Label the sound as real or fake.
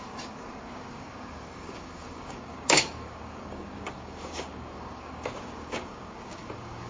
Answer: fake